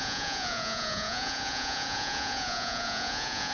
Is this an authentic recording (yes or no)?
no